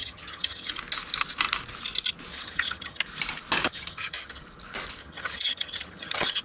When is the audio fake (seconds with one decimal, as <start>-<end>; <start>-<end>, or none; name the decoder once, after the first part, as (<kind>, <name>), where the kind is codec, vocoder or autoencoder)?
0.0-0.7 (vocoder, HiFi-GAN); 2.3-3.0; 3.7-4.4; 5.0-6.4